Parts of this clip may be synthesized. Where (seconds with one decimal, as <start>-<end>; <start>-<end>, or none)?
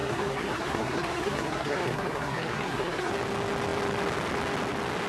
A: 0.0-3.1